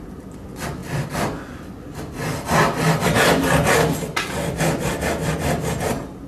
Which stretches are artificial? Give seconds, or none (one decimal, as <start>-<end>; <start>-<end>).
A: none